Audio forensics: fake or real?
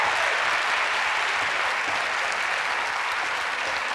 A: real